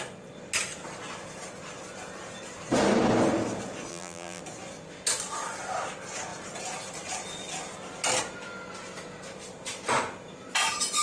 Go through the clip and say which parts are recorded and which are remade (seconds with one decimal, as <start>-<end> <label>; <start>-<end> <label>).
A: 0.0-3.9 recorded; 3.9-4.4 remade; 4.4-11.0 recorded

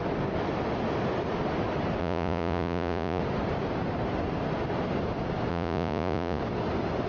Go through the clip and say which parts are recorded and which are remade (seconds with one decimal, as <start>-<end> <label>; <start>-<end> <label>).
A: 0.0-2.0 recorded; 2.0-3.2 remade; 3.2-5.5 recorded; 5.5-6.4 remade; 6.4-7.1 recorded

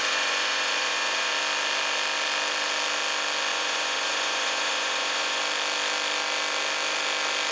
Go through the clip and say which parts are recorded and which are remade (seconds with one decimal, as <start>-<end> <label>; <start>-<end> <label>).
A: 0.0-1.3 remade; 1.3-3.5 recorded; 3.5-5.4 remade; 5.4-7.5 recorded

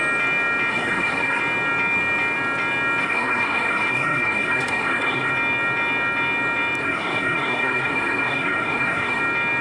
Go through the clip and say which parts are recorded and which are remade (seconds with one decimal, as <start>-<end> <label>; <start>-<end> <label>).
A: 0.0-0.7 recorded; 0.7-1.4 remade; 1.4-3.0 recorded; 3.0-5.3 remade; 5.3-6.8 recorded; 6.8-9.2 remade; 9.2-9.6 recorded

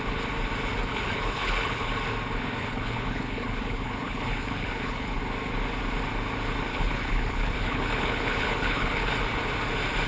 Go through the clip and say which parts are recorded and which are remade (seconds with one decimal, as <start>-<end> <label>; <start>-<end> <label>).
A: 0.0-0.9 recorded; 0.9-1.9 remade; 1.9-2.6 recorded; 2.6-5.2 remade; 5.2-6.7 recorded; 6.7-9.1 remade; 9.1-10.1 recorded

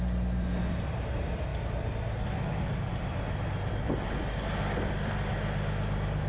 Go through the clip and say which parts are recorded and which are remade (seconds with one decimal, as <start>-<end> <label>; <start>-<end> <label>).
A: 0.0-6.3 recorded

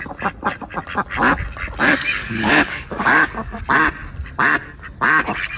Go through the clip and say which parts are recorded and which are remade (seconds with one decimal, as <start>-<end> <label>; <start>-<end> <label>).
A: 0.0-2.2 recorded; 2.2-3.6 remade; 3.6-5.6 recorded

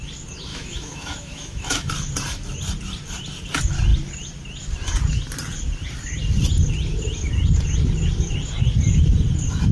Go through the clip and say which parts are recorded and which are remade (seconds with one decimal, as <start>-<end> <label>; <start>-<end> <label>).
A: 0.0-0.5 recorded; 0.5-1.9 remade; 1.9-9.7 recorded